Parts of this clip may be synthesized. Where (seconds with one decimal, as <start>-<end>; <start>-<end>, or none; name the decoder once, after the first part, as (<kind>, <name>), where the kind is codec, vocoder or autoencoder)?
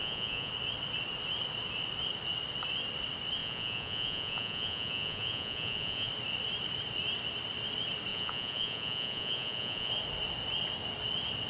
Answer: 0.0-0.5 (vocoder, Vocos); 3.4-6.1; 8.1-9.9